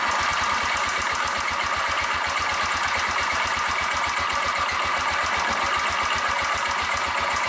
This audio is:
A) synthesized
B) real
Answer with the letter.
B